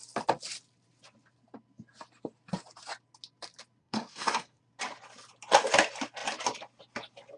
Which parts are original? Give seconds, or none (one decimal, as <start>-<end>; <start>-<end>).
0.0-3.8; 4.6-7.4